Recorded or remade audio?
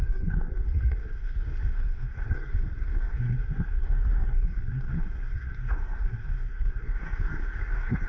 remade